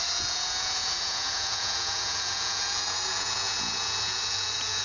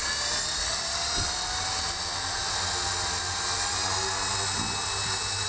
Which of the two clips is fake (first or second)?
first